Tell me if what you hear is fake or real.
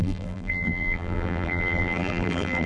fake